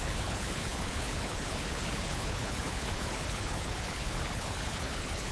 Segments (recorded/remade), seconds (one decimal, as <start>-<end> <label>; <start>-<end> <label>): 0.0-5.3 remade

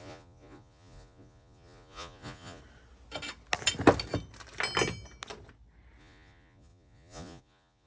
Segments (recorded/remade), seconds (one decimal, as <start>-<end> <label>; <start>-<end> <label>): 0.0-2.6 remade; 2.6-6.0 recorded; 6.0-7.9 remade